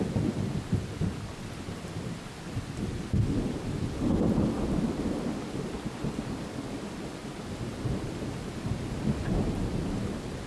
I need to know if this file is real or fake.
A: real